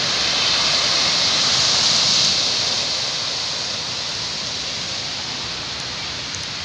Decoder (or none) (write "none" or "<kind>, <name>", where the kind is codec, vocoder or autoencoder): none